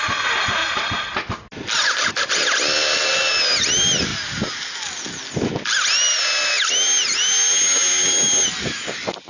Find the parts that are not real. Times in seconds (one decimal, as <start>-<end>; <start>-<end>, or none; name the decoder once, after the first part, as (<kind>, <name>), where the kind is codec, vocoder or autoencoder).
none